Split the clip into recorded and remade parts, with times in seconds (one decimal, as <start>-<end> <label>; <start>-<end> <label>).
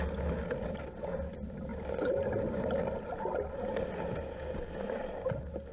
0.0-5.7 recorded